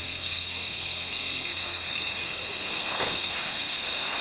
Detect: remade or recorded remade